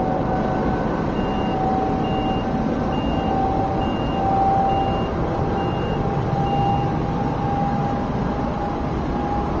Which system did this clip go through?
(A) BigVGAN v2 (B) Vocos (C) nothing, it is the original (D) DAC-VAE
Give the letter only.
C